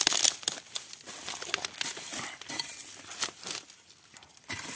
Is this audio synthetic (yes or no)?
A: no